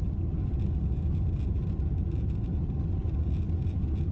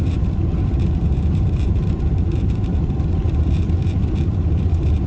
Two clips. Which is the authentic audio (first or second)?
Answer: first